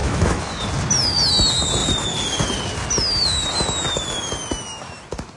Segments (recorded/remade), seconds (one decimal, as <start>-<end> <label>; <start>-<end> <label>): 0.0-0.6 remade; 0.6-5.4 recorded